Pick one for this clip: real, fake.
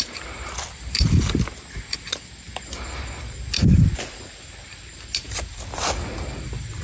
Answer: real